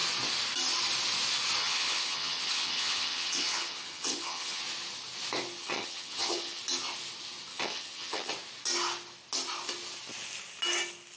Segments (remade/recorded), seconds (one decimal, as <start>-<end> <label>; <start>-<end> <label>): 0.0-1.6 recorded; 1.6-4.6 remade; 4.6-5.6 recorded; 5.6-6.6 remade; 6.6-7.5 recorded; 7.5-8.3 remade; 8.3-11.2 recorded